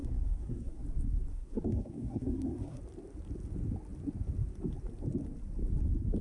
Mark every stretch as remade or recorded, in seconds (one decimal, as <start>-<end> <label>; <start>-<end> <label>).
0.0-0.8 remade; 0.8-1.3 recorded; 1.3-2.8 remade; 2.8-6.2 recorded